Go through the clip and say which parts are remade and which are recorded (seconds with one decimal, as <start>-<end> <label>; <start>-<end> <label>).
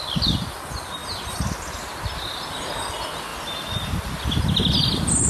0.0-1.0 remade; 1.0-2.5 recorded; 2.5-3.3 remade; 3.3-4.4 recorded; 4.4-5.3 remade